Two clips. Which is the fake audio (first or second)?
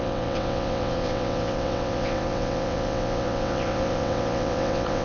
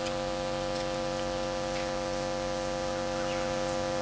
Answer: first